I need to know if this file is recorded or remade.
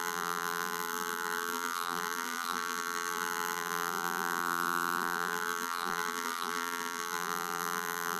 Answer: remade